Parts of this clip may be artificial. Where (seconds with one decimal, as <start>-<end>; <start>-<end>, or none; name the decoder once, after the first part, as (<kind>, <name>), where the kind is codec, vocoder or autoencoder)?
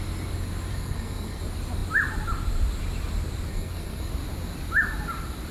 0.7-1.4 (codec, SNAC); 3.5-4.1